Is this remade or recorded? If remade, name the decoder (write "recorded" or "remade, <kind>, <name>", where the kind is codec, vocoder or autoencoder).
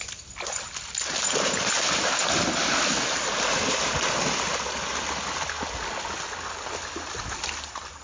recorded